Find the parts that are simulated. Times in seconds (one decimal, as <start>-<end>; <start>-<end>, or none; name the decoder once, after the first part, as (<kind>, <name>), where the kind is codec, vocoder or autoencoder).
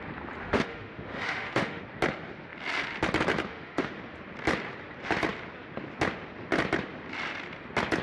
0.4-1.8 (autoencoder, DAC-VAE); 3.5-4.0